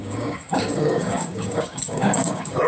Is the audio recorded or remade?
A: remade